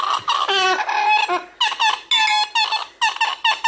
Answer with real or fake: real